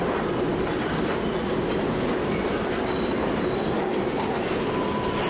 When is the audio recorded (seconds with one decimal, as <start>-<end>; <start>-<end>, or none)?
0.0-5.3